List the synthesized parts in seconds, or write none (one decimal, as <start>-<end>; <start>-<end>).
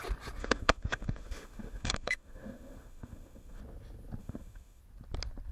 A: 0.4-3.6; 4.2-4.8